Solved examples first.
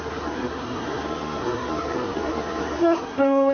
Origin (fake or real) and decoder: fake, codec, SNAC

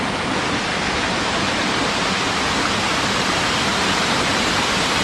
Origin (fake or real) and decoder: real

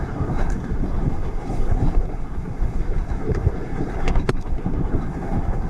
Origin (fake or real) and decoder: fake, codec, SNAC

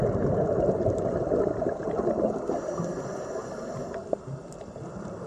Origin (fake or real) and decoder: real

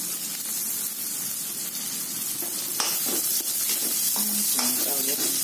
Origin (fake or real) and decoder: real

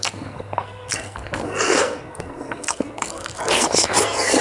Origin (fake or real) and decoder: fake, codec, SNAC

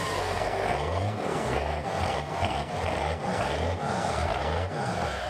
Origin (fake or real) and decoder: fake, codec, SNAC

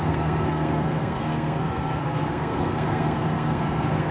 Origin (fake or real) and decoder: fake, codec, SNAC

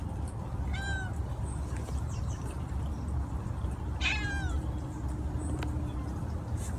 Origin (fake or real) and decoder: real